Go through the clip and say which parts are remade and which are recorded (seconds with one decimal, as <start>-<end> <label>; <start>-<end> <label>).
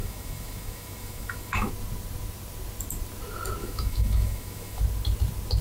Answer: 0.0-1.7 remade; 1.7-3.6 recorded; 3.6-4.8 remade; 4.8-5.6 recorded